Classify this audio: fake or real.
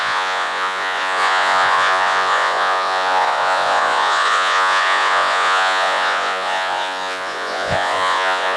fake